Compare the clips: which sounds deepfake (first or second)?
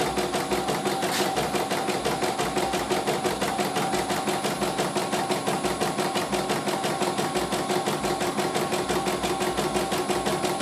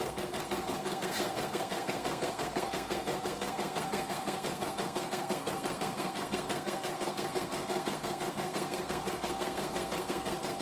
second